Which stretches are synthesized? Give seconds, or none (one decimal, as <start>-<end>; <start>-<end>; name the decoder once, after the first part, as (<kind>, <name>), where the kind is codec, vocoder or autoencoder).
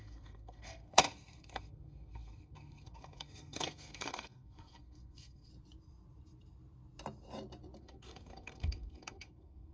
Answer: 0.0-5.5 (codec, SNAC); 7.8-9.7